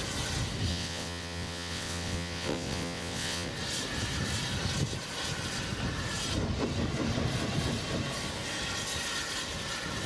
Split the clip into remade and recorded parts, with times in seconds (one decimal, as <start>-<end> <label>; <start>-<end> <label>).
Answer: 0.0-0.7 recorded; 0.7-3.5 remade; 3.5-10.1 recorded